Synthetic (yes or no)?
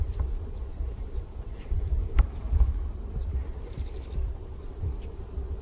yes